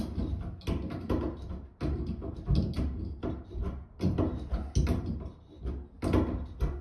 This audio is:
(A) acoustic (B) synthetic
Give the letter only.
A